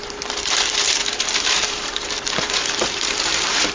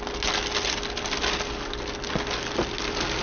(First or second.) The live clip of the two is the second